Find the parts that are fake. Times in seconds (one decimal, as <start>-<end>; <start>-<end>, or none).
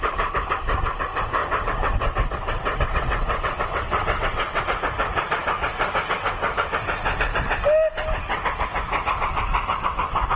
1.4-4.6